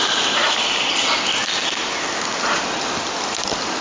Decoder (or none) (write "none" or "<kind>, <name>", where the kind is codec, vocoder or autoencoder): none